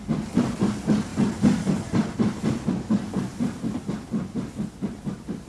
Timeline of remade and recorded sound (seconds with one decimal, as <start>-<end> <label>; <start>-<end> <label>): 0.0-5.5 recorded